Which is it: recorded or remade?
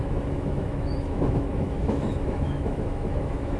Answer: remade